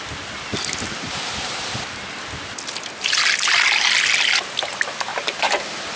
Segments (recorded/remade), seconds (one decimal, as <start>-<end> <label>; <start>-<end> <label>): 0.0-6.0 recorded